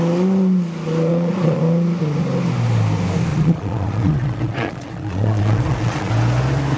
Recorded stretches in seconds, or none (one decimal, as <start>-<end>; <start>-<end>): 0.0-1.1; 1.6-3.3; 6.1-6.8